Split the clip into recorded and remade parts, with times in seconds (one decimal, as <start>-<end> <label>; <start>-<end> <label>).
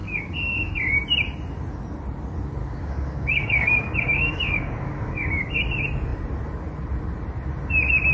0.0-0.8 remade; 0.8-2.6 recorded; 2.6-5.6 remade; 5.6-8.1 recorded